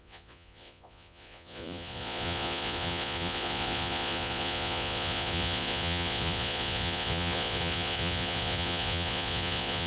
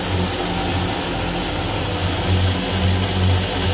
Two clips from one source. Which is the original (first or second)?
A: second